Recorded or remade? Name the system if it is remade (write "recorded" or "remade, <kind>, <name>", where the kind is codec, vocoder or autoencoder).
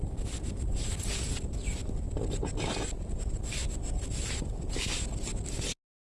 recorded